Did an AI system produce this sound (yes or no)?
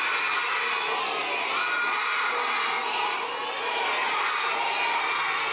no